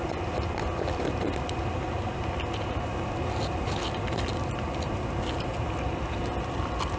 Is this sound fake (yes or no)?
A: no